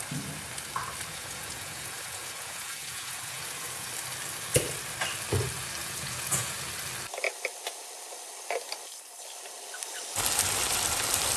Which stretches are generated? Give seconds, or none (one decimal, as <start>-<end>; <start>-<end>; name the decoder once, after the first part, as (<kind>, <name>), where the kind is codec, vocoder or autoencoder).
1.1-3.9 (vocoder, Vocos); 5.8-6.7